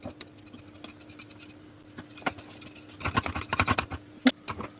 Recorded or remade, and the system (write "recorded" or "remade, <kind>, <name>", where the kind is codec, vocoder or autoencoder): recorded